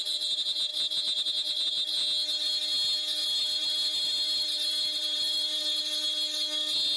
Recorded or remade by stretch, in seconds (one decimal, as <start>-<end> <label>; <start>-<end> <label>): 0.0-3.2 recorded; 3.2-5.8 remade; 5.8-7.0 recorded